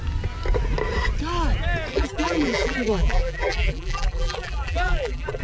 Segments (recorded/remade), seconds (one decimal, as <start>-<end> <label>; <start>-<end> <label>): 0.0-1.9 recorded; 1.9-5.4 remade